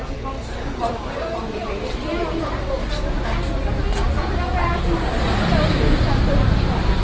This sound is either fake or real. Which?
real